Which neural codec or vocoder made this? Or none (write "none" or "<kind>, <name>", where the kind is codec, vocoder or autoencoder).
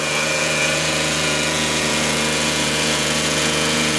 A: vocoder, Vocos